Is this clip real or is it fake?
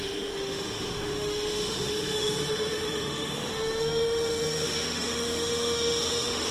fake